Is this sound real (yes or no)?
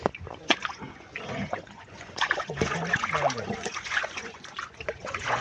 no